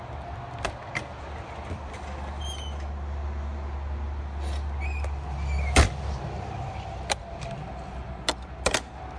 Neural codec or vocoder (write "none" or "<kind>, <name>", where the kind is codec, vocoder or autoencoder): none